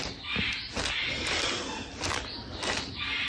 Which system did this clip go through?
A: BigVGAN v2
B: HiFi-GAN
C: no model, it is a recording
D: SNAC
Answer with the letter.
C